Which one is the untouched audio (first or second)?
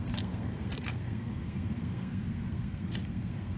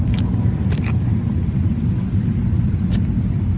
second